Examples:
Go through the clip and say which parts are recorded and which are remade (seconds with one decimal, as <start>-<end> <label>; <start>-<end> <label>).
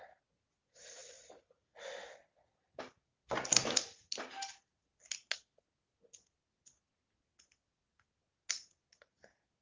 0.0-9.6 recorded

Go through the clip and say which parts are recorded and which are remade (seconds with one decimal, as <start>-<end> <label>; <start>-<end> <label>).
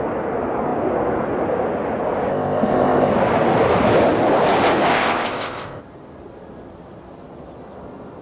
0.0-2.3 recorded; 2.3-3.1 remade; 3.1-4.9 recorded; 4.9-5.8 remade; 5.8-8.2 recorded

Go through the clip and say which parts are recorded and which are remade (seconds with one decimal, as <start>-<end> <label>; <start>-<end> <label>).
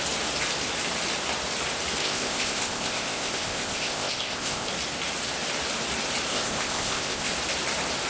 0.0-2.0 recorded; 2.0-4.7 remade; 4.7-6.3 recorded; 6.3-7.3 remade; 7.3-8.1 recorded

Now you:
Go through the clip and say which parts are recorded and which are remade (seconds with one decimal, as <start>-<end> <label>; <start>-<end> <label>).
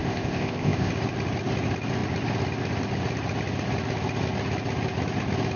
0.0-0.9 remade; 0.9-5.6 recorded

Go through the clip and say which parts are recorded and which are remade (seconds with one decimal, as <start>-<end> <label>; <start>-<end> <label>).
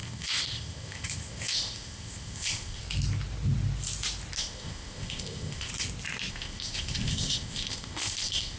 0.0-2.8 remade; 2.8-4.4 recorded; 4.4-5.7 remade; 5.7-6.3 recorded; 6.3-8.6 remade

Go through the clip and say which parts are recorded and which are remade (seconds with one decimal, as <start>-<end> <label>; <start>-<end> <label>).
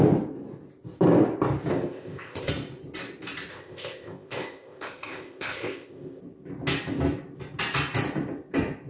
0.0-1.7 recorded; 1.7-2.5 remade; 2.5-3.5 recorded; 3.5-6.2 remade; 6.2-8.9 recorded